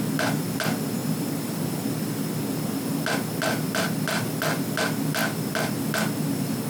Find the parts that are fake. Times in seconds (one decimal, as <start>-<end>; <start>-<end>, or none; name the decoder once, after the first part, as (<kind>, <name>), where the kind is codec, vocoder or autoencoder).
1.0-1.7 (vocoder, BigVGAN v2)